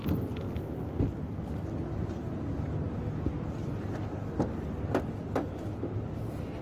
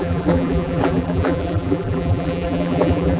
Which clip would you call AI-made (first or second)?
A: second